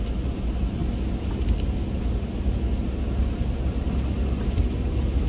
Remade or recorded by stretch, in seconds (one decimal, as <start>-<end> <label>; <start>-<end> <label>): 0.0-5.3 recorded

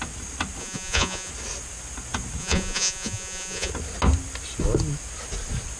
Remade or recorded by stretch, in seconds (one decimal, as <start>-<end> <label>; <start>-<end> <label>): 0.0-0.6 recorded; 0.6-1.3 remade; 1.3-2.4 recorded; 2.4-3.7 remade; 3.7-5.8 recorded

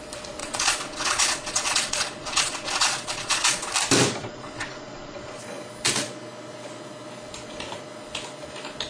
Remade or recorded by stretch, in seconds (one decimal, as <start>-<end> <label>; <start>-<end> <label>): 0.0-0.4 recorded; 0.4-3.7 remade; 3.7-4.2 recorded; 4.2-5.4 remade; 5.4-8.9 recorded

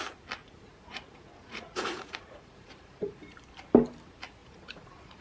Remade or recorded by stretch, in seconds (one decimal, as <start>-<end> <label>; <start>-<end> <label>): 0.0-0.4 recorded; 0.4-3.2 remade; 3.2-4.4 recorded; 4.4-5.2 remade

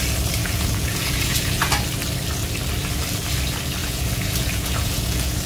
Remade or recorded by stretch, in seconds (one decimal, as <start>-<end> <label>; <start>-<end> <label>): 0.0-0.4 recorded; 0.4-1.7 remade; 1.7-3.8 recorded; 3.8-5.5 remade

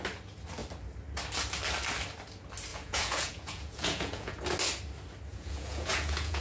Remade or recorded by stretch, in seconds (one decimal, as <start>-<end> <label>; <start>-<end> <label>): 0.0-2.7 recorded; 2.7-4.4 remade; 4.4-5.3 recorded; 5.3-6.4 remade

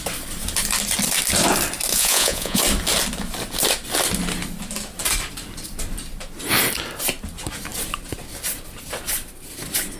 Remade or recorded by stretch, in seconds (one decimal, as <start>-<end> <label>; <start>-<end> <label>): 0.0-1.9 recorded; 1.9-2.6 remade; 2.6-10.0 recorded

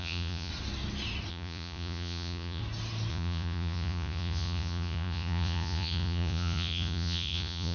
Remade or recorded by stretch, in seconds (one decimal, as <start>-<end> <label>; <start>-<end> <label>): 0.0-0.5 remade; 0.5-1.3 recorded; 1.3-2.6 remade; 2.6-3.1 recorded; 3.1-7.7 remade